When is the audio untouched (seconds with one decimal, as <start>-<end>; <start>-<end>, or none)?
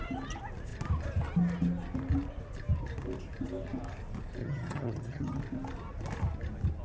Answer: 0.0-4.4; 5.4-6.8